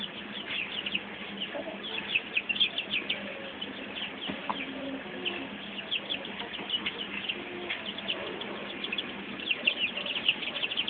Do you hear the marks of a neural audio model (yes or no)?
no